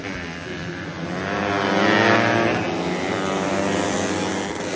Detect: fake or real real